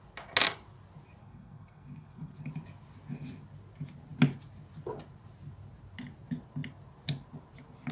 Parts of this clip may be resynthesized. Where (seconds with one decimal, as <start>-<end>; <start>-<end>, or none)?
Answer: 1.2-2.5